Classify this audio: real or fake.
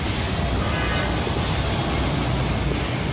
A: real